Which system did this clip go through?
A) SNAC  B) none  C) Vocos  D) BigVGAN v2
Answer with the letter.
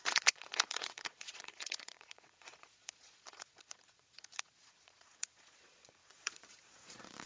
C